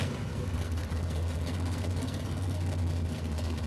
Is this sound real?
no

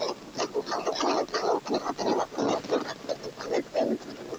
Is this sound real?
yes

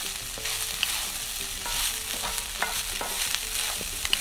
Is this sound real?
yes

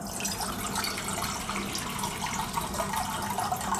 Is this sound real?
yes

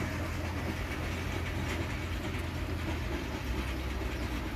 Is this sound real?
yes